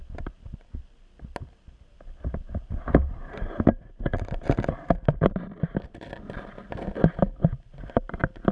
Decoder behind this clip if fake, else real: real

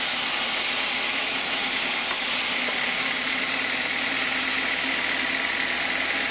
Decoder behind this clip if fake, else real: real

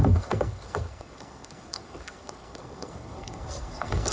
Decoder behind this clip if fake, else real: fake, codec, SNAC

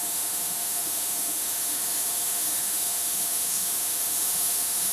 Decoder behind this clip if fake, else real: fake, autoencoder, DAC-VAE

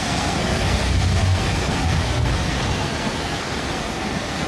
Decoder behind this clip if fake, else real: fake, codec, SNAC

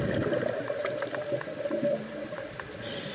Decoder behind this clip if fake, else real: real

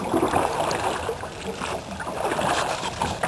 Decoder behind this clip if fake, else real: real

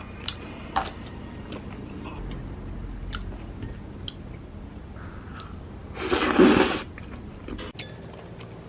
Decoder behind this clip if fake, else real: real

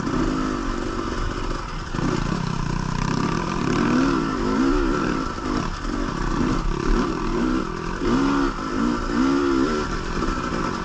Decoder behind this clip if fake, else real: real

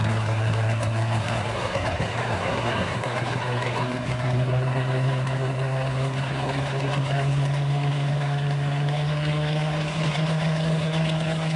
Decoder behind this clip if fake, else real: fake, codec, SNAC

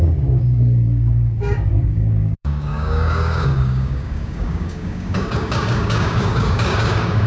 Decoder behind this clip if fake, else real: fake, codec, DAC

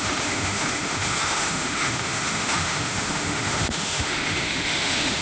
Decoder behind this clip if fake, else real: fake, autoencoder, DAC-VAE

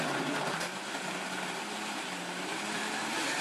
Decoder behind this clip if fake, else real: real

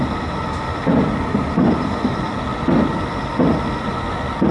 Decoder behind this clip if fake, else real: real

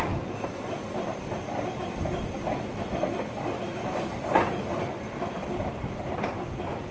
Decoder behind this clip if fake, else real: fake, vocoder, BigVGAN v2